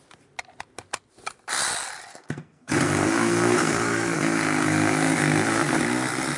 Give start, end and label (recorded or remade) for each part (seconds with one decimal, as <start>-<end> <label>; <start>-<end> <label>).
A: 0.0-2.1 recorded; 2.1-5.8 remade; 5.8-6.4 recorded